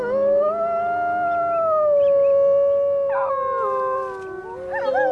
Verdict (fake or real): real